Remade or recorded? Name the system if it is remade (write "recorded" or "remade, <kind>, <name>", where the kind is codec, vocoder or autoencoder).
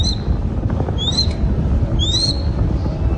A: recorded